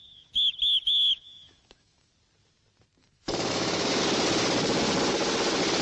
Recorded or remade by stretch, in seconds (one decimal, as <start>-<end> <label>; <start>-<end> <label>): 0.0-2.1 remade; 2.1-3.0 recorded; 3.0-4.0 remade; 4.0-5.8 recorded